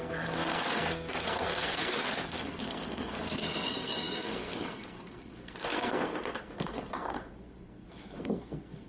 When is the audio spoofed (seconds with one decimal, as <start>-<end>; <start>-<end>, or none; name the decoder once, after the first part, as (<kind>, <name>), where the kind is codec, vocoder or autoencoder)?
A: 0.0-8.9 (codec, SNAC)